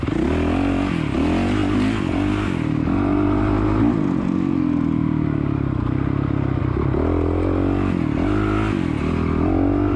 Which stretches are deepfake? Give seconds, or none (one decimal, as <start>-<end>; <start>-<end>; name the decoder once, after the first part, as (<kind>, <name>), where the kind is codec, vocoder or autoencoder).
none